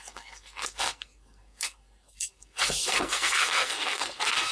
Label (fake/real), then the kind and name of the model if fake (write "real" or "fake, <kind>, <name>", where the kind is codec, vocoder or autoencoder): fake, codec, SNAC